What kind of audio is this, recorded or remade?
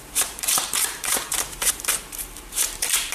remade